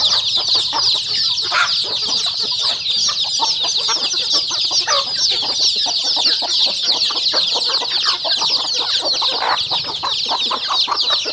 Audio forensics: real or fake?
real